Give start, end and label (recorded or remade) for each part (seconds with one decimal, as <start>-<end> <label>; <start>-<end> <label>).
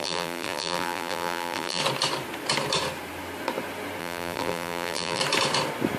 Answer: 0.0-1.8 remade; 1.8-4.0 recorded; 4.0-5.2 remade; 5.2-6.0 recorded